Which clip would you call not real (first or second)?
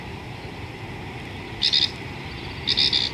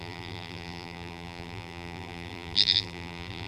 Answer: second